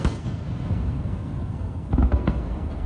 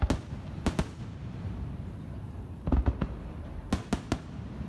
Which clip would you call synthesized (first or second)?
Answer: first